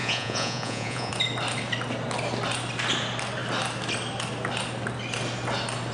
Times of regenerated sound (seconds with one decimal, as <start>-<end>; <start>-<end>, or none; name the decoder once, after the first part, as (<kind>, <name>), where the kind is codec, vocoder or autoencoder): 0.0-1.1 (vocoder, Vocos)